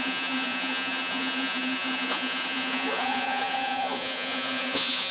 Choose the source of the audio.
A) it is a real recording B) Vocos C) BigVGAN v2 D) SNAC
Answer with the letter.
B